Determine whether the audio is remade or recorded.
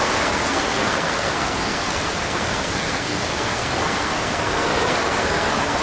remade